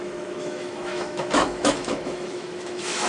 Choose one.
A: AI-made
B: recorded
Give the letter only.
A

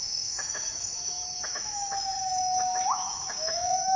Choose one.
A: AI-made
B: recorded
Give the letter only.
A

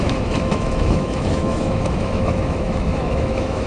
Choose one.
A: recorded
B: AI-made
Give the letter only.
B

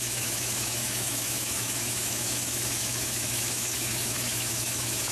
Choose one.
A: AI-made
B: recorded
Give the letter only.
A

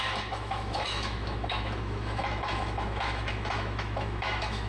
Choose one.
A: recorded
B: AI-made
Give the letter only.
B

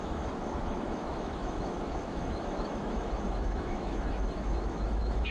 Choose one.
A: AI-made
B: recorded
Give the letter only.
A